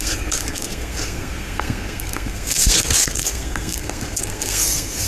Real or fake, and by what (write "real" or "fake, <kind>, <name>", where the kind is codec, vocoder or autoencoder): fake, codec, SNAC